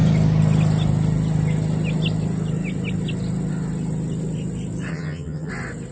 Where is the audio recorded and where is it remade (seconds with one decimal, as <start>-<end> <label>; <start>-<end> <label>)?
0.0-4.9 recorded; 4.9-5.5 remade; 5.5-5.9 recorded